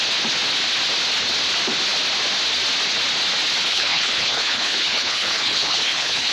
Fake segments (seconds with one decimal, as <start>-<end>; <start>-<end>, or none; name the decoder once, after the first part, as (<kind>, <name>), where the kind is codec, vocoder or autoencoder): 3.7-6.3 (codec, HILCodec)